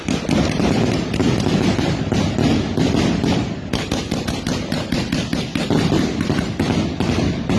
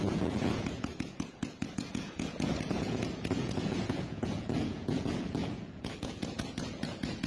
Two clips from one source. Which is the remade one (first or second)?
second